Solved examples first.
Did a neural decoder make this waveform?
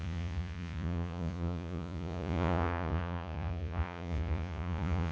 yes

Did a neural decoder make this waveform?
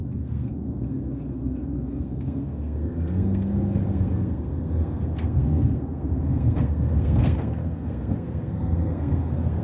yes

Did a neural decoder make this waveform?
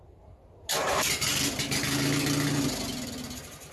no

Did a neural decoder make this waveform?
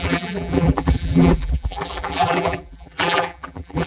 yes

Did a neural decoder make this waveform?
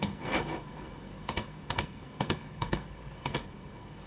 yes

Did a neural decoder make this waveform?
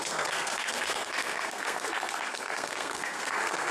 yes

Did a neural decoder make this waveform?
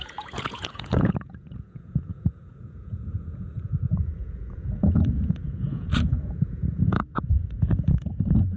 yes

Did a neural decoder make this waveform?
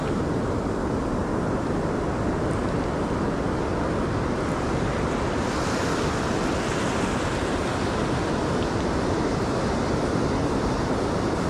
no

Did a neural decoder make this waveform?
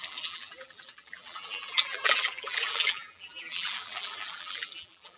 yes